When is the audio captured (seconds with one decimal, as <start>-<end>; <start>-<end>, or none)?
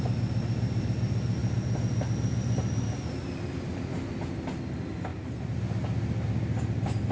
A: 0.0-7.1